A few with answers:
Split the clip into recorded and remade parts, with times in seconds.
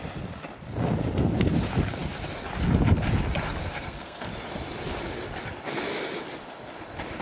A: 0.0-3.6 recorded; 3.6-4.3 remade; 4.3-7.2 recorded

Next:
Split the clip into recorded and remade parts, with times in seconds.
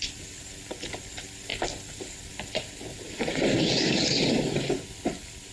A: 0.0-5.5 recorded